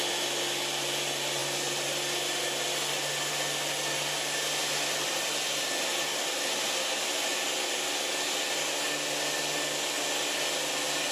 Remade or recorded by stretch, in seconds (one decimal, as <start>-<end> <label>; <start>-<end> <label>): 0.0-11.1 recorded